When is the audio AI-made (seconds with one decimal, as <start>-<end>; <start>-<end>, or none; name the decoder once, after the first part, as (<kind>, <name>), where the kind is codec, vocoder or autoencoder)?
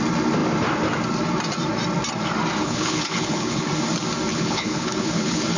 2.6-3.7 (codec, HILCodec); 4.3-5.6